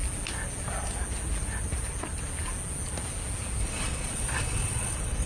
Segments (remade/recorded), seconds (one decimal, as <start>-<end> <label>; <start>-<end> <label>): 0.0-3.6 recorded; 3.6-5.3 remade